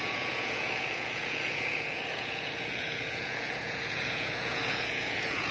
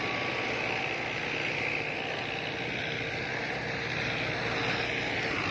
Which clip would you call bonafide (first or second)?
second